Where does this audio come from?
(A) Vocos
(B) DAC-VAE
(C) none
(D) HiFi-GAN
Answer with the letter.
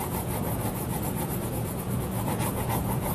A